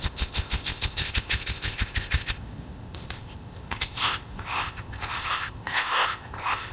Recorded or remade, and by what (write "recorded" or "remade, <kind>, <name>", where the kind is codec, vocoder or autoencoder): remade, codec, ZipCodec